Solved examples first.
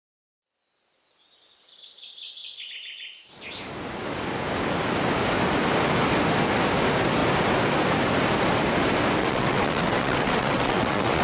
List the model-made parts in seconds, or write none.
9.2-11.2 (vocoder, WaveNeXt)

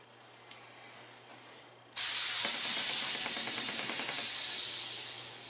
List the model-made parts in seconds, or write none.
none

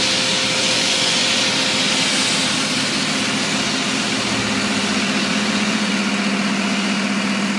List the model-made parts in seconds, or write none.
0.6-1.4 (vocoder, Vocos); 5.3-5.9

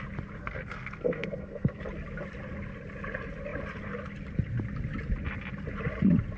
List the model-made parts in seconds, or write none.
0.4-1.8 (codec, SNAC)

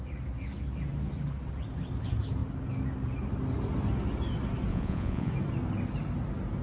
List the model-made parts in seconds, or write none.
4.7-5.3 (vocoder, Vocos)

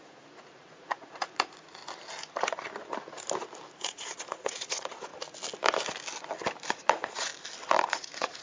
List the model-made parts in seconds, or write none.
0.0-1.8 (vocoder, Vocos); 3.8-5.1; 6.7-7.3; 7.9-8.4